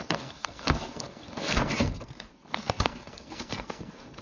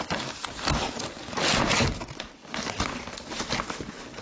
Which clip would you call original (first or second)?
second